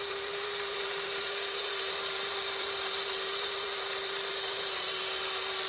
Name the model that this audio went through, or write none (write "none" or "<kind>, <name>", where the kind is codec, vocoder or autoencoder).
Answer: vocoder, BigVGAN v2